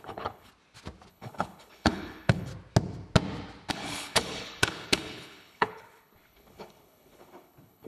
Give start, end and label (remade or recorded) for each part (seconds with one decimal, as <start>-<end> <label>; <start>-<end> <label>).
0.0-0.5 remade; 0.5-1.1 recorded; 1.1-2.5 remade; 2.5-3.7 recorded; 3.7-7.9 remade